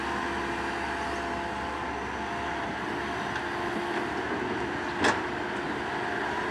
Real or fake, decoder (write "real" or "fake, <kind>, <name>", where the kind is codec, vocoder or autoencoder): real